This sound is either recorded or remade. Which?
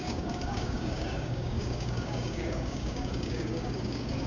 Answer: remade